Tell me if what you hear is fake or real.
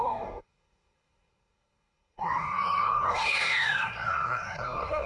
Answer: fake